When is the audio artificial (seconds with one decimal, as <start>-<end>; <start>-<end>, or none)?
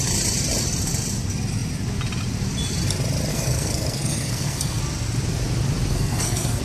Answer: 3.3-4.8; 5.9-6.6